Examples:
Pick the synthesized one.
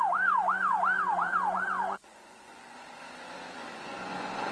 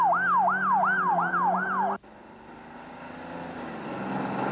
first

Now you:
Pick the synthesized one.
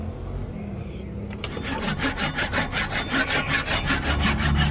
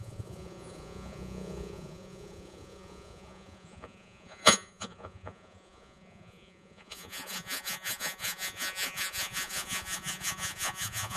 second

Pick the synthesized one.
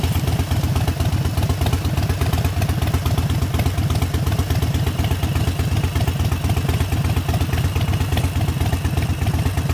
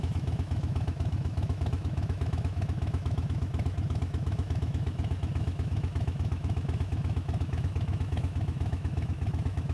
second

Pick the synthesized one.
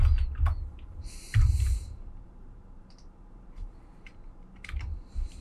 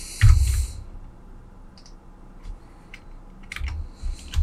first